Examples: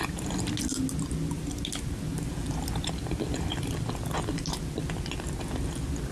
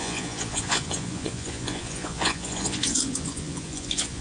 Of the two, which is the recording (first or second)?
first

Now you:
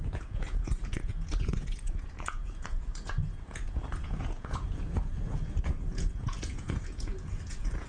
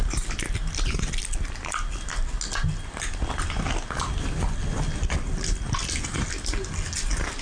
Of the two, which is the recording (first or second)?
second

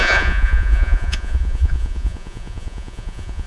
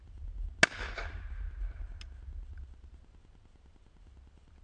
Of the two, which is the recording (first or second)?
second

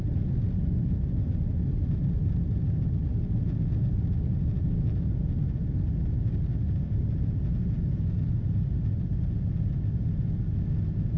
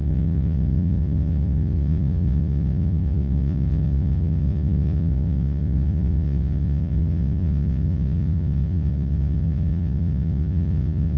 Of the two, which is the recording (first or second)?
first